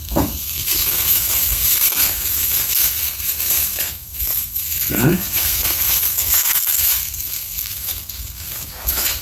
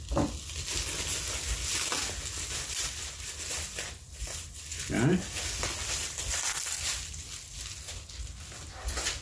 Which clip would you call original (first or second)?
second